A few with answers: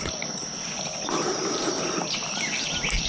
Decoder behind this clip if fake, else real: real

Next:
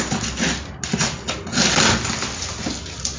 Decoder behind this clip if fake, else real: real